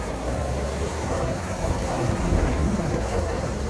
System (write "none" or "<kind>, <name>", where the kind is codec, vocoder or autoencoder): codec, SNAC